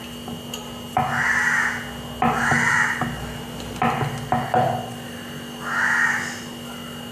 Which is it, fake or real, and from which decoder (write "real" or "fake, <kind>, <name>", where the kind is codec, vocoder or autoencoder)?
real